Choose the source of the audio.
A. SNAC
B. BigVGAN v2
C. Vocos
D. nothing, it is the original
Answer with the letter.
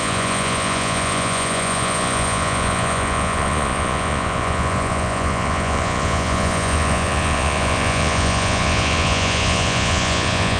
C